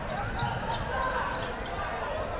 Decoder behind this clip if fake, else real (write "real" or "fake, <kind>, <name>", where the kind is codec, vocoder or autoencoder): real